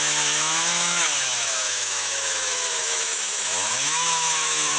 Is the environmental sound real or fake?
fake